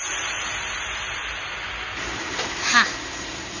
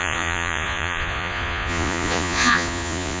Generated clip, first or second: second